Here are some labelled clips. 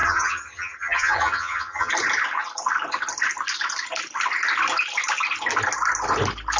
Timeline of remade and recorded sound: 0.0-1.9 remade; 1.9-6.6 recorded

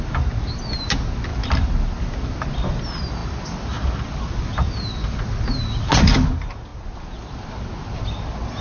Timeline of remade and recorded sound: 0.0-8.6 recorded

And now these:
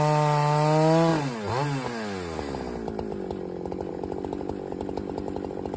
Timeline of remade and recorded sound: 0.0-5.8 recorded